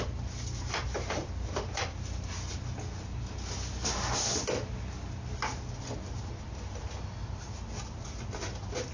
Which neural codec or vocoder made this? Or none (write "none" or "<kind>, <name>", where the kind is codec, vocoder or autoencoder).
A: none